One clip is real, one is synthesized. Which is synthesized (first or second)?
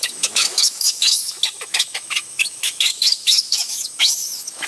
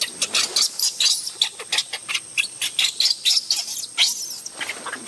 first